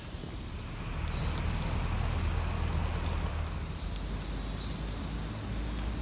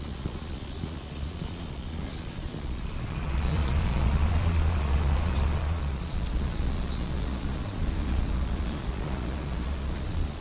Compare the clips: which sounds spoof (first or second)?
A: second